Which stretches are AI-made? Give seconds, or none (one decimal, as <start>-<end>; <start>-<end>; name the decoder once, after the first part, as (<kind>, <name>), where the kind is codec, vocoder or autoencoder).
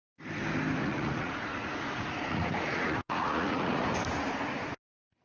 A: 0.8-3.9 (vocoder, Vocos)